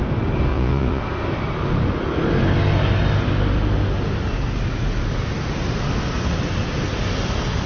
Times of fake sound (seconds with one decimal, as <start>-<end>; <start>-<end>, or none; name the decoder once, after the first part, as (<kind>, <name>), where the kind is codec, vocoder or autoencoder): 0.5-1.0 (vocoder, Vocos)